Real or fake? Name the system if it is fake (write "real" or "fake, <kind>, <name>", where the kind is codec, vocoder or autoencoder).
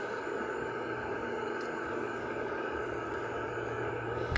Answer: fake, codec, DAC